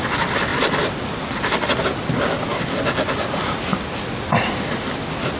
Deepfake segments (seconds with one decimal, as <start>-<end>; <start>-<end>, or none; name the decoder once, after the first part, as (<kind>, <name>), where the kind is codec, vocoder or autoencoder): none